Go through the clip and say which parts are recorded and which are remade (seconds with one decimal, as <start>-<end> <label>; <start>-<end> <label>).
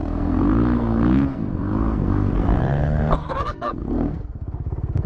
0.0-5.1 remade